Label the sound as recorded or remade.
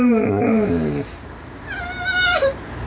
remade